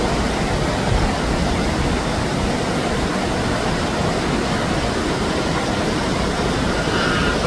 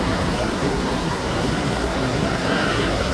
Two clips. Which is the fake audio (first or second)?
second